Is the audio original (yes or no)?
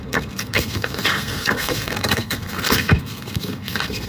no